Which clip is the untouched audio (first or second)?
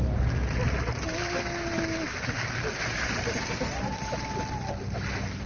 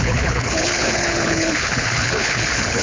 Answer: first